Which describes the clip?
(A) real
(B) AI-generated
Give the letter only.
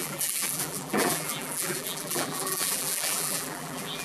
B